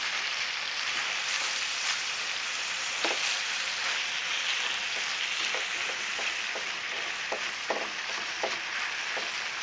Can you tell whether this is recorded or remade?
recorded